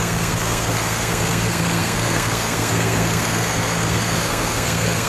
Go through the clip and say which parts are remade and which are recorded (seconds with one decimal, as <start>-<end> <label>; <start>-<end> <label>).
0.0-5.1 remade